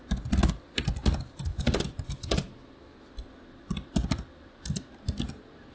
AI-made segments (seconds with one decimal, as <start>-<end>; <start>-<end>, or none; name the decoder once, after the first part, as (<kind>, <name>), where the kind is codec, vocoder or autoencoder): none